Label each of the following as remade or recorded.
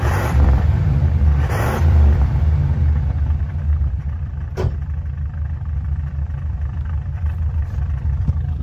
remade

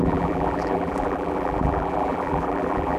remade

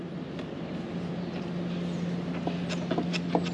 recorded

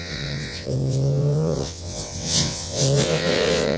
remade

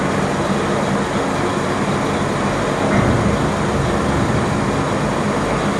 recorded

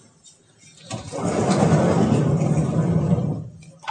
recorded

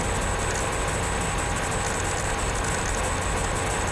recorded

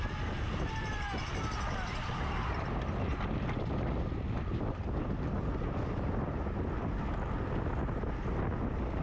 recorded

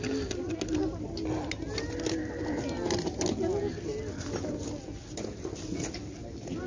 recorded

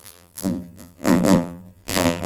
remade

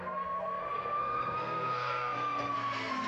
remade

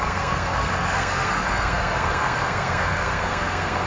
remade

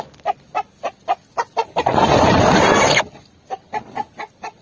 recorded